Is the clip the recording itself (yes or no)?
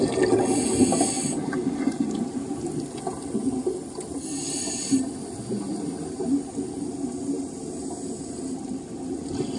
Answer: yes